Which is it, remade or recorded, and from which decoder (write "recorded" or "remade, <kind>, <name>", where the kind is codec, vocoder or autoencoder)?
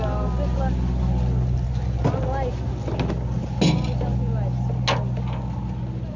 recorded